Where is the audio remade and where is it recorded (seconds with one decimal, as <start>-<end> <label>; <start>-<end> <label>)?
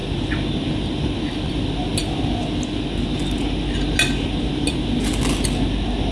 0.0-6.1 recorded